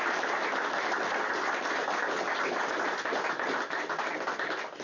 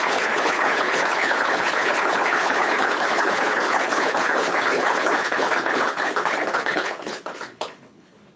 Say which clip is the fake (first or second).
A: second